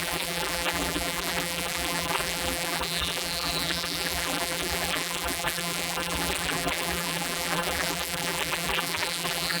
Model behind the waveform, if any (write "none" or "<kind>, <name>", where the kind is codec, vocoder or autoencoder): vocoder, BigVGAN v2